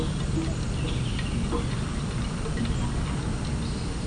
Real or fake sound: real